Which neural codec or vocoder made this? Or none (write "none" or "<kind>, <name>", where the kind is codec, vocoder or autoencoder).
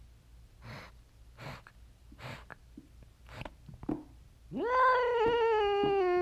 none